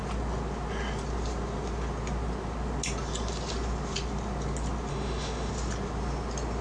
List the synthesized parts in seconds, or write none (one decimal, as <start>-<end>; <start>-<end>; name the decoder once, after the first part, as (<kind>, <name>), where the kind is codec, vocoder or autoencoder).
4.9-5.5 (autoencoder, DAC-VAE)